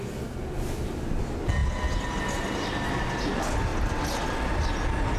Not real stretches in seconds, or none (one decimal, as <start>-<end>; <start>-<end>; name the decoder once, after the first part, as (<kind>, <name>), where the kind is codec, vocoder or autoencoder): 0.7-1.2 (vocoder, BigVGAN v2)